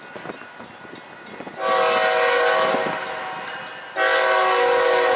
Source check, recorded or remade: recorded